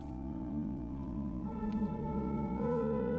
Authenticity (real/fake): fake